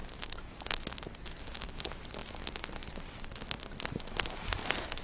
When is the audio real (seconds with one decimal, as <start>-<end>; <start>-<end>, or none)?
0.0-5.0